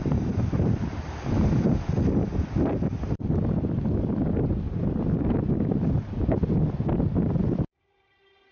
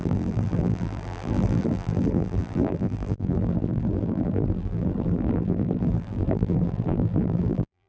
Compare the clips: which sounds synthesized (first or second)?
second